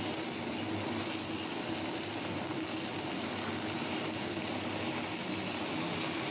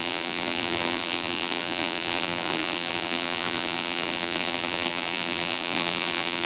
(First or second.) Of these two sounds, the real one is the first